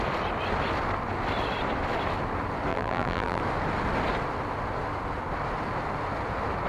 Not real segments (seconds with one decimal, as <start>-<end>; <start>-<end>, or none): 2.7-3.4